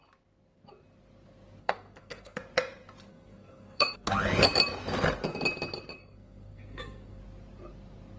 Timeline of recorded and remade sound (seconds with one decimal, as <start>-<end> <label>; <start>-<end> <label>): 0.0-1.6 recorded; 1.6-2.4 remade; 2.4-3.1 recorded; 3.1-4.1 remade; 4.1-6.0 recorded; 6.0-7.2 remade; 7.2-8.2 recorded